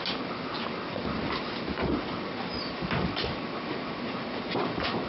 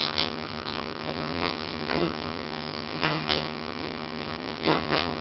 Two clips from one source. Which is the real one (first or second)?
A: first